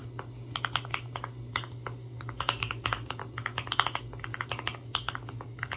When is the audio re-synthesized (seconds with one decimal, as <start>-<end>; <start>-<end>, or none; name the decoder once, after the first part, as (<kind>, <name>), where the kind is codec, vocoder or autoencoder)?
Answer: 1.5-3.2 (codec, DAC); 4.5-5.8